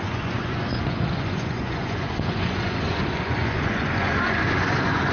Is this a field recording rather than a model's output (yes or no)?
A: no